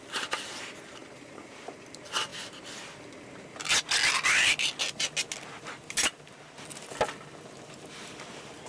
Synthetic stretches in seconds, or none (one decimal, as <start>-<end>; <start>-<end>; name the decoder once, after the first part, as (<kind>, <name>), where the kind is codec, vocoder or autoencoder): 1.0-1.6 (vocoder, BigVGAN v2)

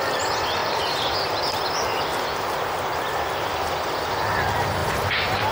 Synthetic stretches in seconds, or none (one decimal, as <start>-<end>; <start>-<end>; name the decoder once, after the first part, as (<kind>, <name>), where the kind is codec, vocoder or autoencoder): 0.6-1.4 (vocoder, BigVGAN v2)

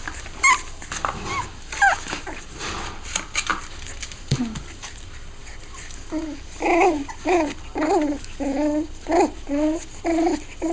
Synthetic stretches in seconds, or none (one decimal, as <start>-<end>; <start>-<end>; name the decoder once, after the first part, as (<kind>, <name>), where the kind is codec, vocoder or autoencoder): none

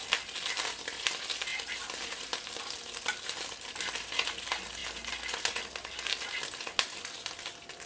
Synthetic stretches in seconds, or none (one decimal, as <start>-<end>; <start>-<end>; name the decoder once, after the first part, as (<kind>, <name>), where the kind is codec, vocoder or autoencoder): none

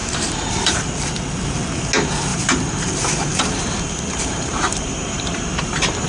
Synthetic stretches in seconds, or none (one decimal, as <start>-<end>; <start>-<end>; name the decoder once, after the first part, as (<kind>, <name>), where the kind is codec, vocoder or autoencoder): 0.0-0.9 (vocoder, BigVGAN v2); 2.3-6.1

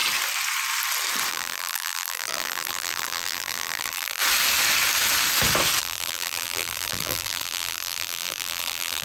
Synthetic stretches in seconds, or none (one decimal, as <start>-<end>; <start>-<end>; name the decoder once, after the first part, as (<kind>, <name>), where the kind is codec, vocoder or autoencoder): 1.3-4.2 (vocoder, BigVGAN v2); 5.8-9.0

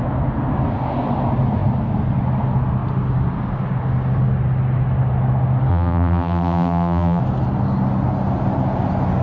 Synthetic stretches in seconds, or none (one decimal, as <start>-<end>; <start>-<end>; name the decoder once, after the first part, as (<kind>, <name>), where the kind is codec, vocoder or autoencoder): 5.7-7.2 (vocoder, BigVGAN v2)